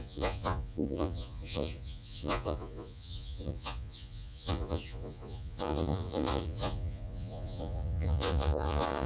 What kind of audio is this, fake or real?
fake